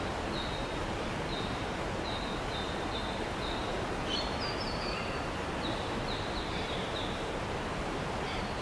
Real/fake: real